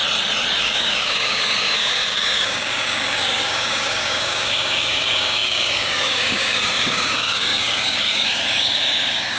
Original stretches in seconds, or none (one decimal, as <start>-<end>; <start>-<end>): 0.0-0.6

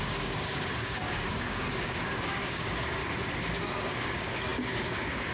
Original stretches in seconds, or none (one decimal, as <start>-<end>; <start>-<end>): 3.0-3.6